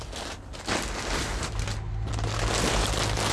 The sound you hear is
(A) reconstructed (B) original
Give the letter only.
B